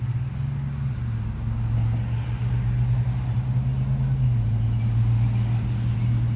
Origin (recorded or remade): recorded